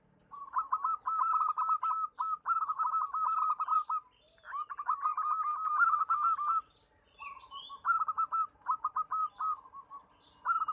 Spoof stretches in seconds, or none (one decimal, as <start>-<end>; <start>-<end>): none